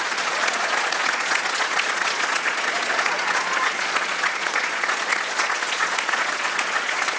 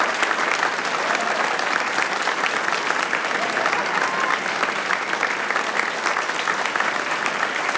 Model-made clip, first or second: first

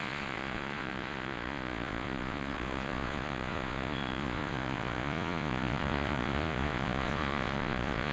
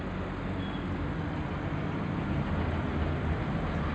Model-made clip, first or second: first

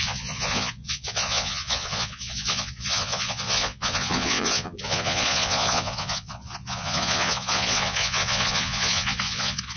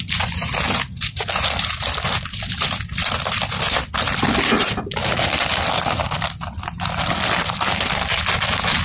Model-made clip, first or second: first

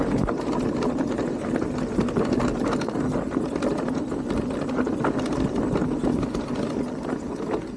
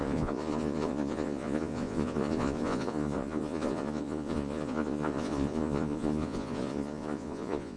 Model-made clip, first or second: second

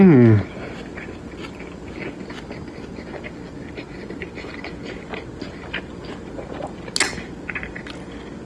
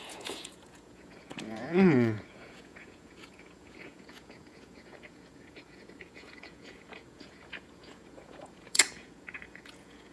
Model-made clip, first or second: second